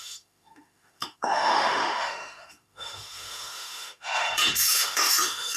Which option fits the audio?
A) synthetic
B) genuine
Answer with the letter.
A